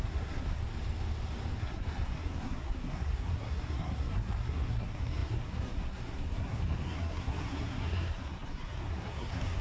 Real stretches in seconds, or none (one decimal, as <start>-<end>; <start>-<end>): 0.6-1.6